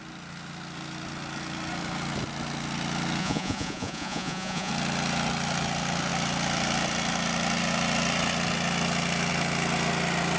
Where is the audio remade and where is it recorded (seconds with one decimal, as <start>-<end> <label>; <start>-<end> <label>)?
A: 0.0-3.2 recorded; 3.2-4.7 remade; 4.7-10.4 recorded

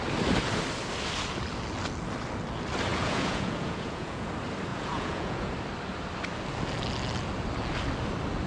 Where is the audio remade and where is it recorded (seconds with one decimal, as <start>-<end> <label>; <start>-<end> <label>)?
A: 0.0-2.9 recorded; 2.9-4.3 remade; 4.3-4.7 recorded; 4.7-5.5 remade; 5.5-8.5 recorded

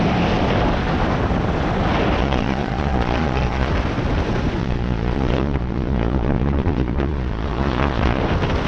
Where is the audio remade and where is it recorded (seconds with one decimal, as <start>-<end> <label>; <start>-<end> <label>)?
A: 0.0-2.2 recorded; 2.2-3.7 remade; 3.7-4.6 recorded; 4.6-8.2 remade; 8.2-8.7 recorded

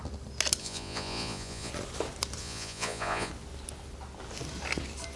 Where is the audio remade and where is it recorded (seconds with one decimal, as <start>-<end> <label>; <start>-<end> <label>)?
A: 0.0-0.6 recorded; 0.6-1.7 remade; 1.7-2.4 recorded; 2.4-3.3 remade; 3.3-5.2 recorded

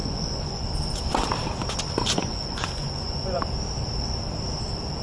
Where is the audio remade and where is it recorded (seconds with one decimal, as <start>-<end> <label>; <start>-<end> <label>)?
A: 0.0-0.6 remade; 0.6-2.2 recorded; 2.2-3.4 remade; 3.4-5.0 recorded

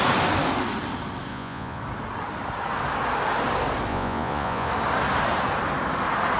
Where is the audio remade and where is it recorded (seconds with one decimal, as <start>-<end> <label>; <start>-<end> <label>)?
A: 0.0-1.3 recorded; 1.3-1.8 remade; 1.8-3.9 recorded; 3.9-4.7 remade; 4.7-6.4 recorded